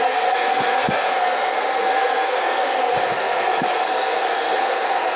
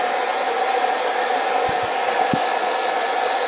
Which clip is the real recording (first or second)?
second